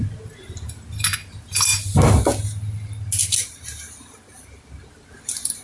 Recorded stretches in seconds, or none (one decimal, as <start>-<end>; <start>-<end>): 0.0-5.6

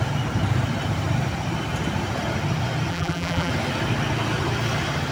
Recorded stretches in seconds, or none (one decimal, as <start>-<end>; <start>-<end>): 0.0-2.9; 3.5-5.1

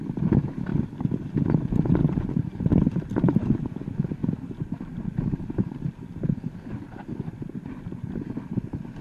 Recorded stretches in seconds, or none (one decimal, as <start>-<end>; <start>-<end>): 0.0-2.0; 3.6-4.2; 6.1-9.0

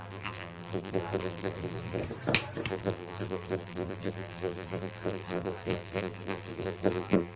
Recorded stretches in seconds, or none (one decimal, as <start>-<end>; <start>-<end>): 2.0-2.7

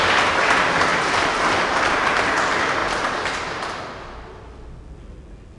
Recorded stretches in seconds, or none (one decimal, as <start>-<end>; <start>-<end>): 0.0-0.9; 1.9-5.6

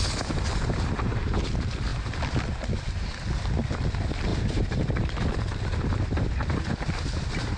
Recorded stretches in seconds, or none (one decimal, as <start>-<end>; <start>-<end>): 0.0-4.3; 5.3-7.6

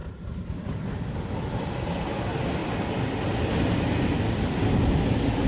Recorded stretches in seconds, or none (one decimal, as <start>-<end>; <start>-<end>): 0.5-5.5